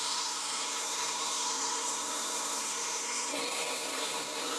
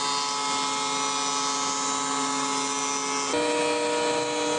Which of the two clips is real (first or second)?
second